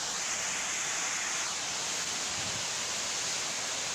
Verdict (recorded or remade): recorded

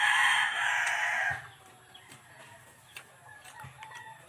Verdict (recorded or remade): remade